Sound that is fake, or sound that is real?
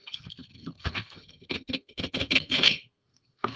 fake